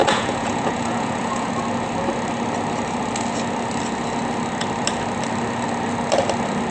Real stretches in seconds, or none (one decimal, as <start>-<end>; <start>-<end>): 1.5-6.7